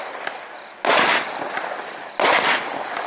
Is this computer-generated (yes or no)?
no